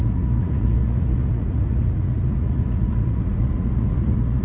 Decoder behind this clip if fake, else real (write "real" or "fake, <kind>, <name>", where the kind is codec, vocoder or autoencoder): fake, vocoder, Vocos